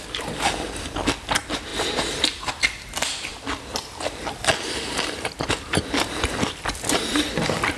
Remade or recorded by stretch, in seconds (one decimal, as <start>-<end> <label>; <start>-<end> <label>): 0.0-7.8 remade